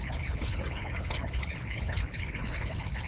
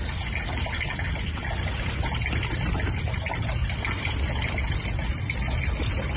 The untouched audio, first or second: second